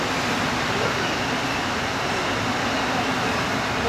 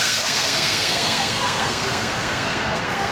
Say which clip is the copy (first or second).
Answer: second